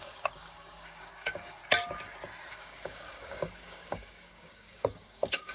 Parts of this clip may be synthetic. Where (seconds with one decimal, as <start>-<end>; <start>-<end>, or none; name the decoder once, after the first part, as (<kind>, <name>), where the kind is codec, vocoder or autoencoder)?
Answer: 0.0-1.6 (codec, DAC); 2.5-5.5